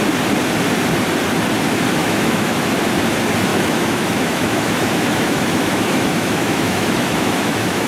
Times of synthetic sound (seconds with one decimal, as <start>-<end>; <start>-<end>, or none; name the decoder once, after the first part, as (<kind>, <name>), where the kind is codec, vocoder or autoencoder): 2.0-2.7 (autoencoder, DAC-VAE); 3.5-7.9